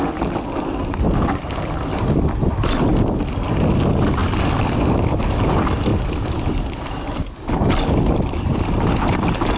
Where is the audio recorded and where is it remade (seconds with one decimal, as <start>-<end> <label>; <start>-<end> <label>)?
0.0-4.2 recorded; 4.2-5.3 remade; 5.3-5.9 recorded; 5.9-6.8 remade; 6.8-9.6 recorded